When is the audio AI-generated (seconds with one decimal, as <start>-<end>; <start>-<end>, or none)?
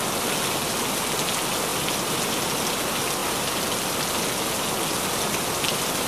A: 1.7-2.4